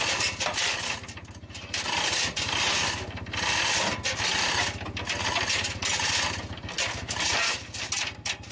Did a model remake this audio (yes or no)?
no